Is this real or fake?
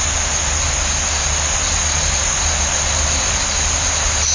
real